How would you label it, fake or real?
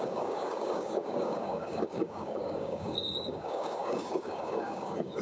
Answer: fake